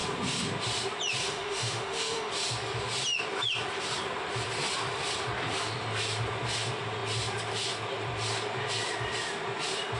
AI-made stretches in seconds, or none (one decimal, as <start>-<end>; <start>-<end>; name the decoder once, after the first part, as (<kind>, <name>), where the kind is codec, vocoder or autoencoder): 1.2-2.3 (autoencoder, DAC-VAE)